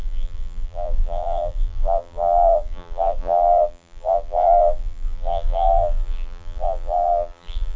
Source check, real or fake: fake